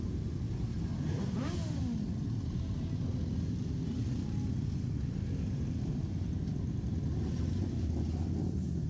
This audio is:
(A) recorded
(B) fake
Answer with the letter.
A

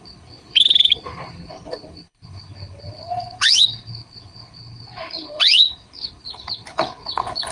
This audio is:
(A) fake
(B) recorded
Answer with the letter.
A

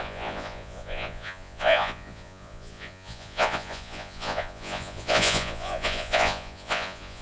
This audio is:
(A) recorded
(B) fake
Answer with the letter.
B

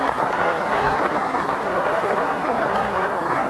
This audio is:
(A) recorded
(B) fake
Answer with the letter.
B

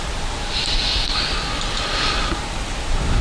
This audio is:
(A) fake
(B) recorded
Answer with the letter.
B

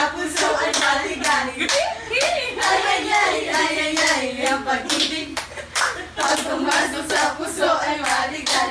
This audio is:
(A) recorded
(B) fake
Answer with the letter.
A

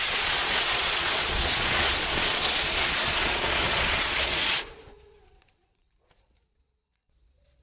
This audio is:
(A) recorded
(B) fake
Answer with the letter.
B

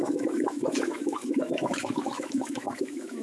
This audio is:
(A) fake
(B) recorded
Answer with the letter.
A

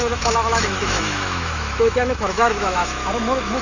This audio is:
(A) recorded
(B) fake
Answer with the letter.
B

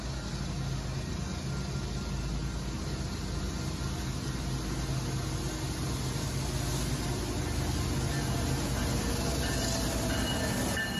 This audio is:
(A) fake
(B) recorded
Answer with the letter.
B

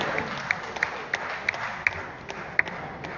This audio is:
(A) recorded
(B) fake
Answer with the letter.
A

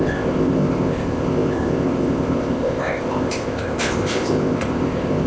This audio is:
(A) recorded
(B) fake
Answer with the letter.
B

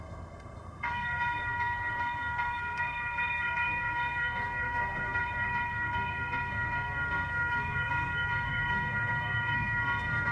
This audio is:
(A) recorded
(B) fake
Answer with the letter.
B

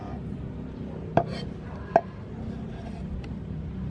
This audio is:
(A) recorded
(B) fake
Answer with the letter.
A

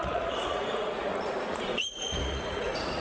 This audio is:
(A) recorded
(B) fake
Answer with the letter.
B